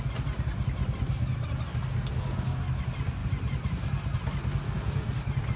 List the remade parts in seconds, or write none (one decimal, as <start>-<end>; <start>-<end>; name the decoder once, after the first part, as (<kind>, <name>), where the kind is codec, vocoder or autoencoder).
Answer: none